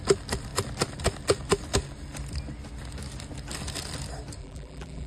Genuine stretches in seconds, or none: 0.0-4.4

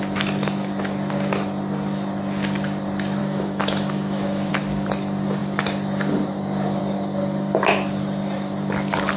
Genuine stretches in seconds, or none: 0.0-3.2; 4.5-9.2